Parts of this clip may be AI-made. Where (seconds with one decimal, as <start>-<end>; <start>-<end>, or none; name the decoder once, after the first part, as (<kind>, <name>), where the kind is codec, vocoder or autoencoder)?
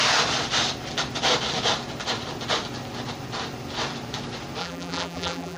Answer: 4.6-5.6 (vocoder, BigVGAN v2)